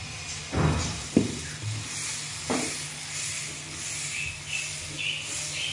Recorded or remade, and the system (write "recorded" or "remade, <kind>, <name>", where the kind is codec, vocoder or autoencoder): recorded